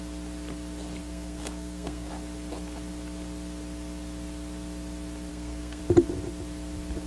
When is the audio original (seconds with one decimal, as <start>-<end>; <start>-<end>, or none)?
0.0-1.0; 2.1-5.3; 5.8-7.1